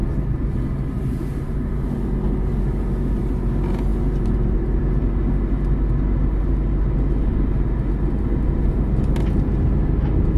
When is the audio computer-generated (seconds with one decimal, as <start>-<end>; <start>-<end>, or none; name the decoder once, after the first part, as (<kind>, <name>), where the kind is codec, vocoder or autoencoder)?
none